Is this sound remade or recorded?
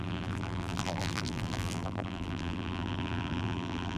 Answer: remade